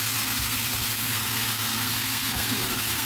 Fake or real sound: fake